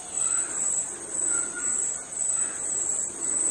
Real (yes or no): yes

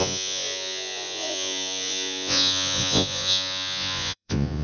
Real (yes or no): no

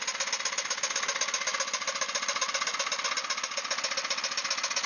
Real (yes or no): yes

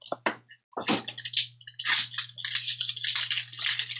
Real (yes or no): yes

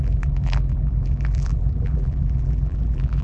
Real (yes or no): no